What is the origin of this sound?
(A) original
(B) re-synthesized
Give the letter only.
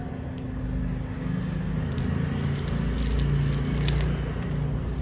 A